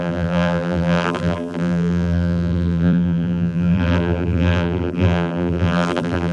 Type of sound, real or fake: fake